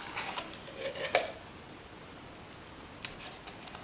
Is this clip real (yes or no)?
yes